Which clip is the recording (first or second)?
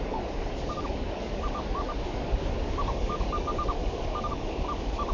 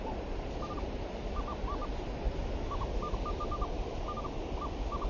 second